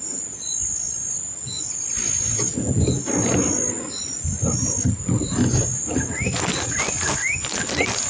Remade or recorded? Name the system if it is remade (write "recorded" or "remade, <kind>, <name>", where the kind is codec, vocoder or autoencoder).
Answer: recorded